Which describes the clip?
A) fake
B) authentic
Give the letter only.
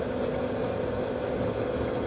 B